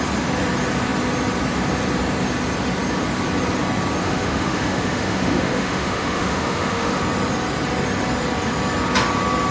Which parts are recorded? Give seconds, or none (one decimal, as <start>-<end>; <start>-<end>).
0.0-4.0; 7.0-9.5